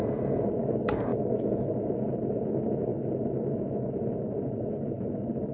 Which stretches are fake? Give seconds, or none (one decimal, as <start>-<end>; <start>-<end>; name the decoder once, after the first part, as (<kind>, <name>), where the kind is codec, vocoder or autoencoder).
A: none